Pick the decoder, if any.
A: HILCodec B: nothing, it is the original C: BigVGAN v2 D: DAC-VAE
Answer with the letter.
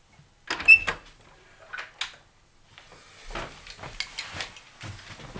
B